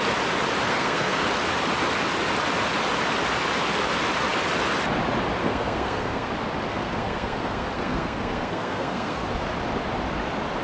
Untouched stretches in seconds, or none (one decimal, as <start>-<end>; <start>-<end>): 0.0-0.7; 1.2-5.4; 6.3-6.7; 9.3-10.6